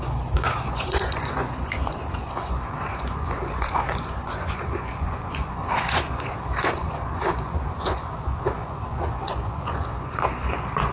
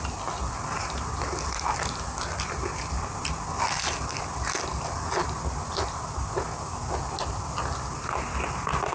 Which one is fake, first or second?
first